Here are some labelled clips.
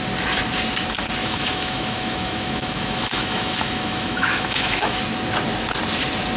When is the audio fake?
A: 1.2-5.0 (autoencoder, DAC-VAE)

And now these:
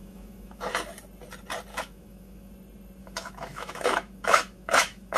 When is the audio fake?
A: 0.0-0.7 (autoencoder, DAC-VAE); 1.7-2.5; 3.0-5.2

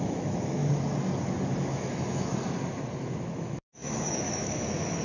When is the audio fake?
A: 0.0-0.6 (autoencoder, DAC-VAE); 1.6-2.3; 3.0-5.0

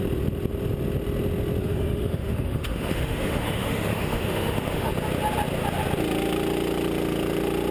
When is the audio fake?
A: 1.6-4.9 (autoencoder, DAC-VAE)

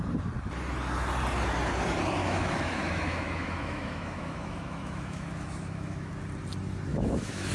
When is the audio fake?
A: 2.2-6.1 (autoencoder, DAC-VAE); 6.9-7.5

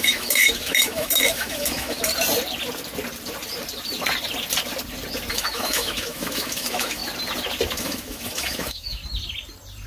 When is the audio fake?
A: 0.0-2.1 (autoencoder, DAC-VAE); 5.3-7.0; 7.8-9.0

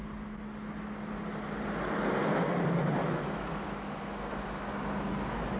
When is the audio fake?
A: 3.0-4.7 (autoencoder, DAC-VAE)

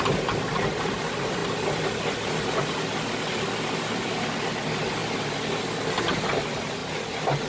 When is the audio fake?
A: none